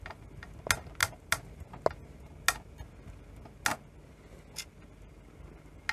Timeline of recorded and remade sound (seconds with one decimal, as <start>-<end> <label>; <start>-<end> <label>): 0.0-5.9 recorded